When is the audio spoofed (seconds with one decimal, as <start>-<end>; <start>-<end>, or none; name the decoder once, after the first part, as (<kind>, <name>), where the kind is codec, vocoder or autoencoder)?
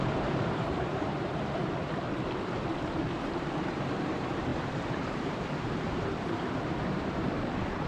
0.0-1.6 (vocoder, BigVGAN v2); 2.5-7.9